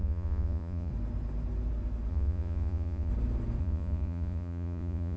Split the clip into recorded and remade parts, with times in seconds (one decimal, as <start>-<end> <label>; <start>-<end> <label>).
0.0-0.9 remade; 0.9-2.1 recorded; 2.1-3.1 remade; 3.1-3.6 recorded; 3.6-5.2 remade